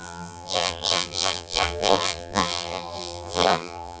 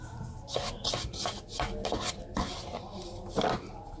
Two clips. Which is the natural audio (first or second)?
second